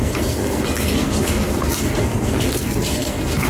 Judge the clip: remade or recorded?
remade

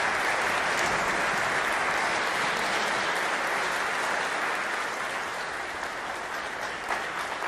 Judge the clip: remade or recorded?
recorded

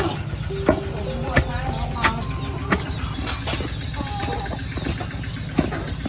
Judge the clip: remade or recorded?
recorded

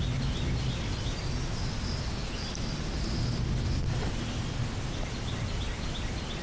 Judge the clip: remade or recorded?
recorded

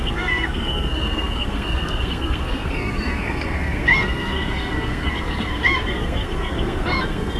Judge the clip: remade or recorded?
remade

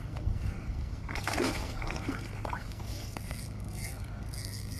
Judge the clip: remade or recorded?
remade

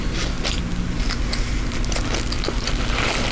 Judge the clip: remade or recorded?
recorded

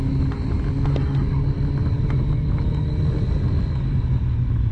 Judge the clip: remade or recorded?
recorded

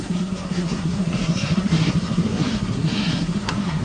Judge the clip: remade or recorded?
remade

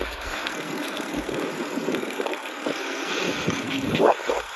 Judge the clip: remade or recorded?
remade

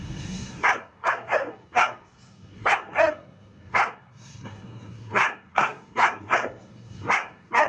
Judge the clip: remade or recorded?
remade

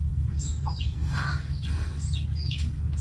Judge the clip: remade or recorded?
remade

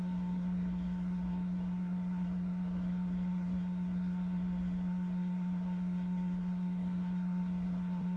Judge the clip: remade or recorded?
remade